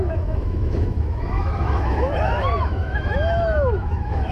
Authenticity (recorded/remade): remade